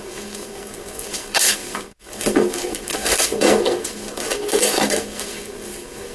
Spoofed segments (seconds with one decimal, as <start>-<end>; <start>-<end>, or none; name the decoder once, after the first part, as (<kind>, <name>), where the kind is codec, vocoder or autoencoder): 0.0-6.1 (codec, SNAC)